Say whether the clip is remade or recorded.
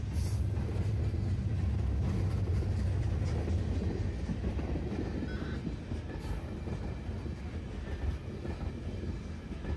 recorded